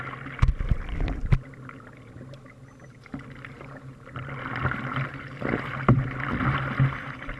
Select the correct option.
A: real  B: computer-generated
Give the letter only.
A